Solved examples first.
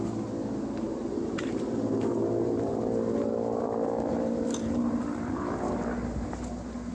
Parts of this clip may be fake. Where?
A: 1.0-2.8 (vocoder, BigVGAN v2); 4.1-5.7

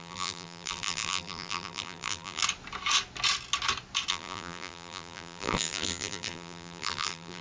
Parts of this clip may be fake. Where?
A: 0.0-2.4 (vocoder, BigVGAN v2); 4.1-7.4

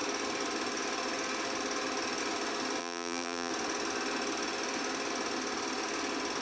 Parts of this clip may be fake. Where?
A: 2.8-3.5 (vocoder, BigVGAN v2)

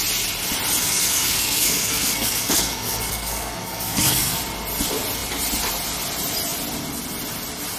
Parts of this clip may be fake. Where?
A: 0.8-4.4 (codec, SNAC)

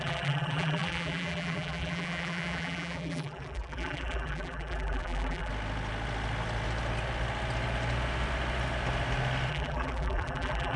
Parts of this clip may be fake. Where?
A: 0.0-5.5 (vocoder, BigVGAN v2); 9.5-10.8

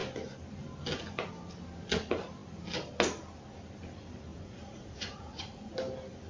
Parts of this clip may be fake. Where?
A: 4.3-5.7 (vocoder, Vocos)